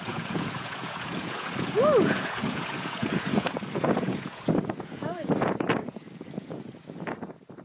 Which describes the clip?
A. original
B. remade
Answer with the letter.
B